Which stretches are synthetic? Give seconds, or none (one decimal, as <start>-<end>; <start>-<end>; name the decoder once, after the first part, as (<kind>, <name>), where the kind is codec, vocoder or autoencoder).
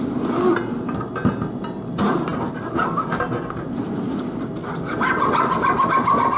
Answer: none